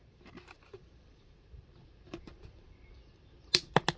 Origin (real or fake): real